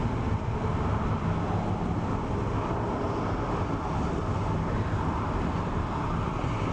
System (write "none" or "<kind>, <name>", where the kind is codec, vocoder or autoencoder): none